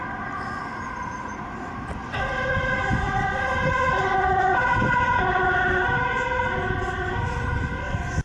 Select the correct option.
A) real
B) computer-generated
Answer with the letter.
A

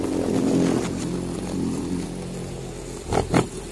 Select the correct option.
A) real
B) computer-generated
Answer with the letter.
A